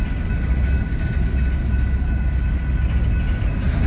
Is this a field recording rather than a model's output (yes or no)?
yes